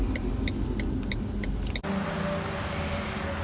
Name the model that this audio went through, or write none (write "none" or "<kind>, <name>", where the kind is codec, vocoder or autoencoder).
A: none